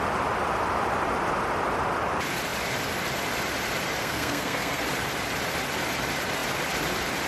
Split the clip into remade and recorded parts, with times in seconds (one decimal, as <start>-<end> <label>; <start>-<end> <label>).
0.0-4.0 recorded; 4.0-4.8 remade; 4.8-7.3 recorded